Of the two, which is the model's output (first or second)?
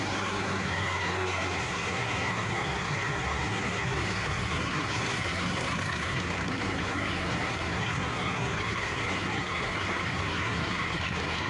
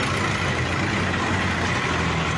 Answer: first